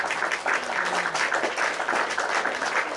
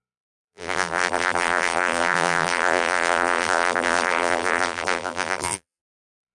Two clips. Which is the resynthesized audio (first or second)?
second